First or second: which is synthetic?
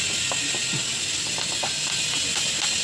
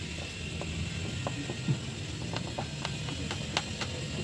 first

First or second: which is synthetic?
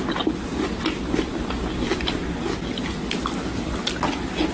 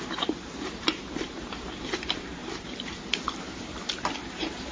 second